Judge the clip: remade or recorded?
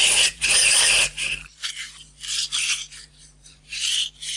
remade